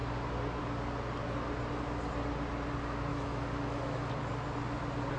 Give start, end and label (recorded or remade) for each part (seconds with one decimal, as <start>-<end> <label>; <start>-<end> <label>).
0.0-3.1 recorded; 3.1-4.1 remade; 4.1-5.2 recorded